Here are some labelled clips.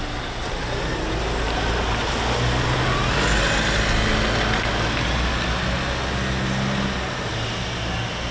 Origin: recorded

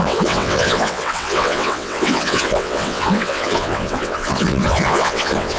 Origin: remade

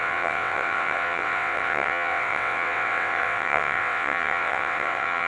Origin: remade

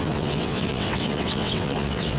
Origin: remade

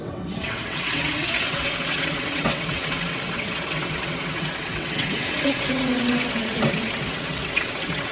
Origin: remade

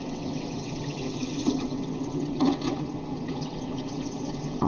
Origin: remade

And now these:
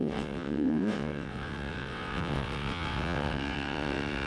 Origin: remade